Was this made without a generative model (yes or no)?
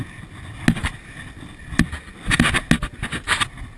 yes